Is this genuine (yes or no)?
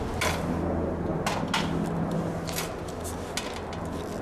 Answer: yes